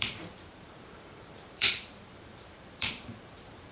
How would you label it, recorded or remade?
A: remade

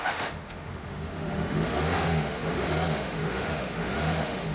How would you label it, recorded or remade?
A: remade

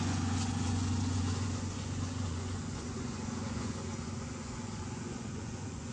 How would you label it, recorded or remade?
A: remade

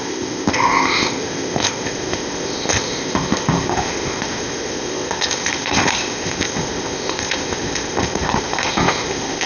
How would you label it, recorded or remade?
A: remade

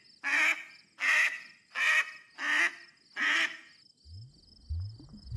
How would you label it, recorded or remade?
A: recorded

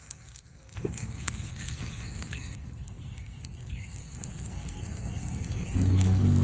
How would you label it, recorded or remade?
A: remade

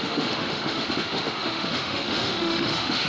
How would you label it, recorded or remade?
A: remade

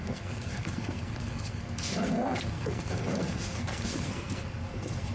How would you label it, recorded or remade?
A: remade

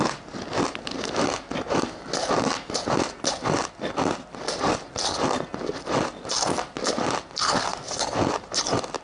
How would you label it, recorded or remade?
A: recorded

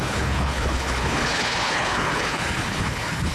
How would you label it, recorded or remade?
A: remade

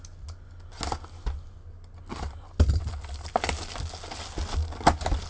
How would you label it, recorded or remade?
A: recorded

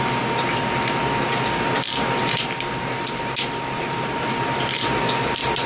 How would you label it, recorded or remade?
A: recorded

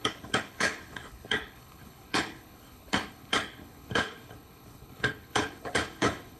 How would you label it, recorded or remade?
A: remade